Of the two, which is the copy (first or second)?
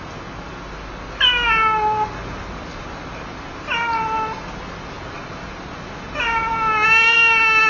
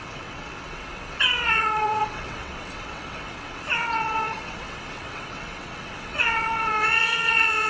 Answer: second